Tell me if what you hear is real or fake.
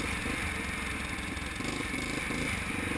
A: real